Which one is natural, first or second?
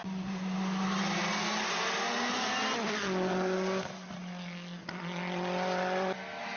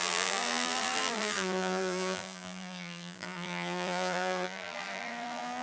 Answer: first